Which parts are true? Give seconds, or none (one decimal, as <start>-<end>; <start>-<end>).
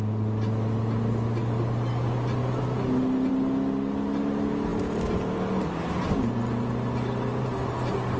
0.0-8.2